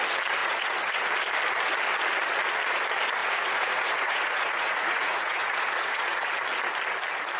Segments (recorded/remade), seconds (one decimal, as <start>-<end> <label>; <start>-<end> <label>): 0.0-0.4 recorded; 0.4-1.1 remade; 1.1-3.2 recorded; 3.2-6.3 remade; 6.3-7.4 recorded